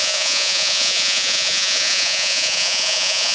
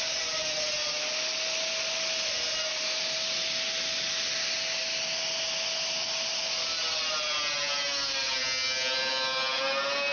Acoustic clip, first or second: second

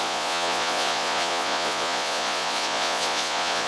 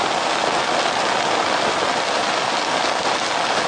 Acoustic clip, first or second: second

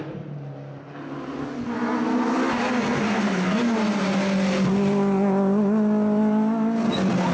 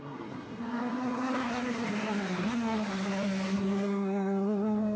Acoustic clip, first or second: first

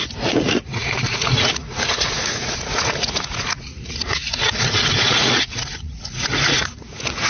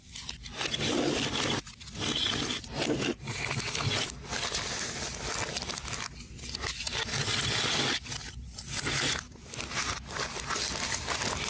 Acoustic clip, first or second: second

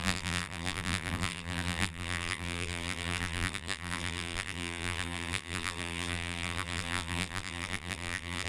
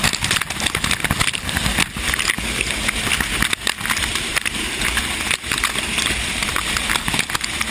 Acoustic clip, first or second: second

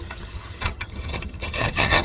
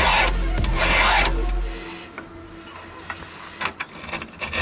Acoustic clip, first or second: second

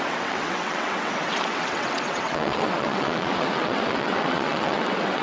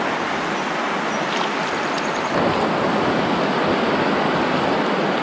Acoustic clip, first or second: second